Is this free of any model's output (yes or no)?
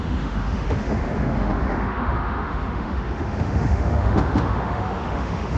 no